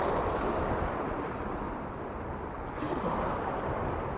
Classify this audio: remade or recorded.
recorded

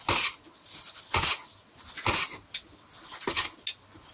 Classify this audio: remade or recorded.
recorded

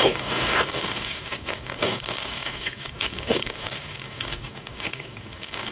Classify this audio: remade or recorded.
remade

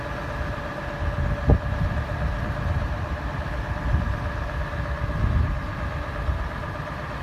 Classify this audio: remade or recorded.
recorded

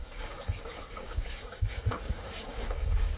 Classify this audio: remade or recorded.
remade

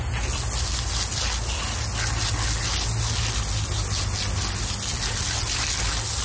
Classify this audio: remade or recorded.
recorded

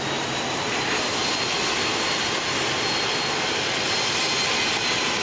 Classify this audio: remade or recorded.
recorded